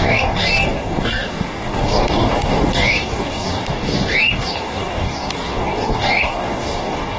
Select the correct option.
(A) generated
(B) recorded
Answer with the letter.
A